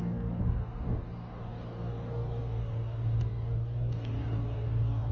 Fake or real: fake